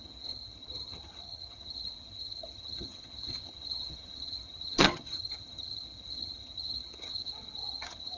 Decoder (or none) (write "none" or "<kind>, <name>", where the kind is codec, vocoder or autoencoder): vocoder, HiFi-GAN